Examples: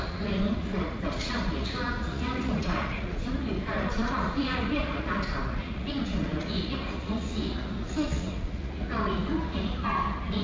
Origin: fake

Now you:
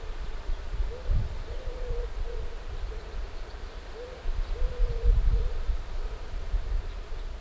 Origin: fake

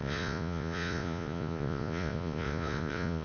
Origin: fake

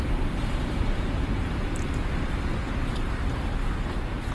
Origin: fake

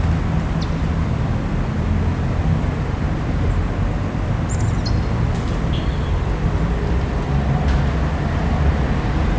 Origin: real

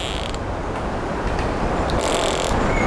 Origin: real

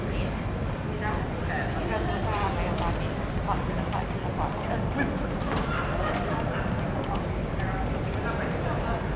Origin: real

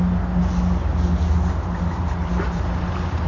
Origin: real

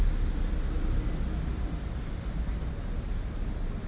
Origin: real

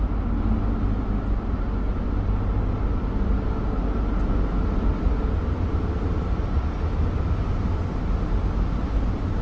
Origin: real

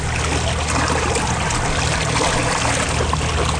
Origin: real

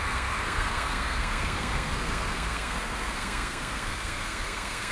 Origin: fake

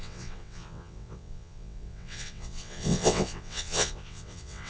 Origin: fake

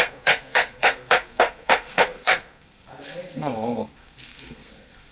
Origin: fake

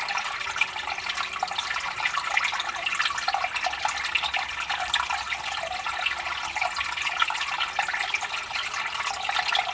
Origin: real